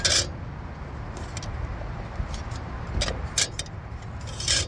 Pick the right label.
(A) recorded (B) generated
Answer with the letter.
A